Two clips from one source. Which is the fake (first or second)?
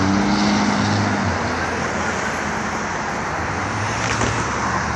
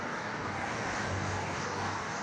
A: second